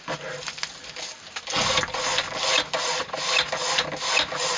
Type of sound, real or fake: real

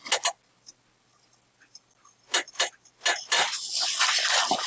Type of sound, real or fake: real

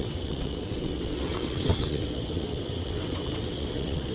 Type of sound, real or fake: fake